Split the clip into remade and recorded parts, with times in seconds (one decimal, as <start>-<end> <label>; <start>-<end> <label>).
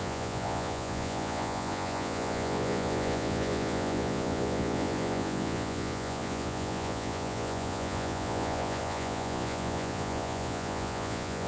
0.0-11.5 remade